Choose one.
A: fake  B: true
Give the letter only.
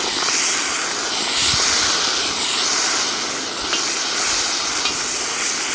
B